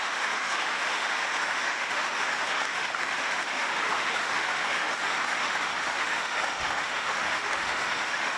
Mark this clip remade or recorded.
remade